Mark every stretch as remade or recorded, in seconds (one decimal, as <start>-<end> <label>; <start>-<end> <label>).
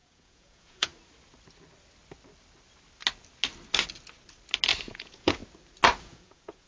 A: 0.0-0.9 remade; 0.9-4.9 recorded; 4.9-5.4 remade; 5.4-6.0 recorded; 6.0-6.7 remade